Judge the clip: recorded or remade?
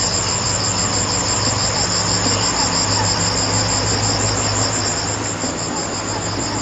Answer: recorded